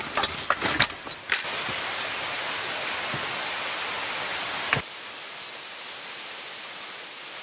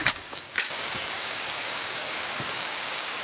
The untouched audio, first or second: first